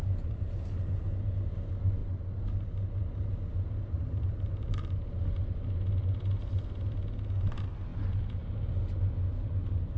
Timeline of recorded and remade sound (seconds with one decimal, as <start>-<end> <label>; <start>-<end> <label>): 0.0-10.0 recorded